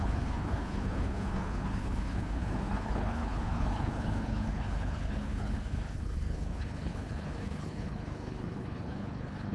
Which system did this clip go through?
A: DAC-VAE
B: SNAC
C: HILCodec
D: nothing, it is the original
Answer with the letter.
C